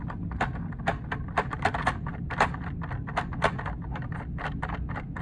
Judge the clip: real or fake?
real